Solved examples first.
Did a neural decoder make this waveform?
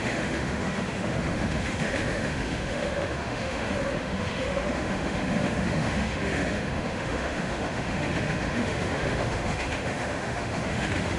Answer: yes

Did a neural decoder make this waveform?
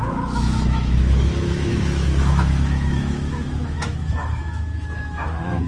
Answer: yes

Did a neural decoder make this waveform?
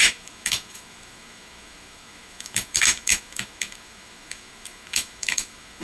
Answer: yes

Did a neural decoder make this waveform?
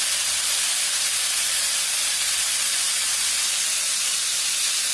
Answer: no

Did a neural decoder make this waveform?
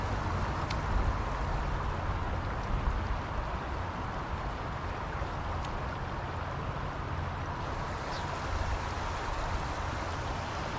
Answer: no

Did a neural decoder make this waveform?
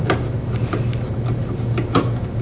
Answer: no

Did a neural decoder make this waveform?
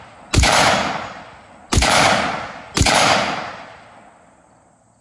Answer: no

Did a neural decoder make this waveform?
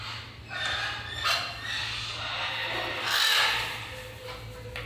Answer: no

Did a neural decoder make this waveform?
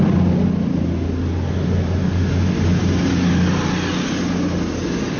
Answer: no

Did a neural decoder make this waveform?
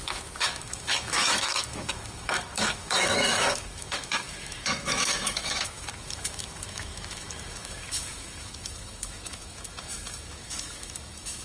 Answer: yes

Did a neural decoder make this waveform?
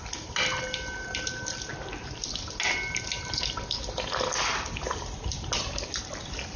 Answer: no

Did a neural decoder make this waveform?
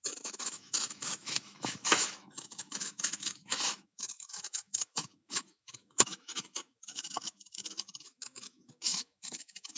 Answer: yes